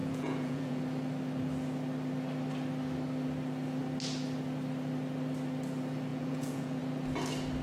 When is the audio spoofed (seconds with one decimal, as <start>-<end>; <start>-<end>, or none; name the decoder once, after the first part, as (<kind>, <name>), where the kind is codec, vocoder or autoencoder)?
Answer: 0.0-0.8 (vocoder, Vocos); 6.1-6.8

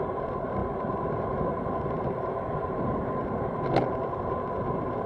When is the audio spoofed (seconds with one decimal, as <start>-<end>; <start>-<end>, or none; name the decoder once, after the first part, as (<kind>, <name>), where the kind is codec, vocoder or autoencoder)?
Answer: none